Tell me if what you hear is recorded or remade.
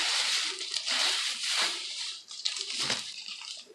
remade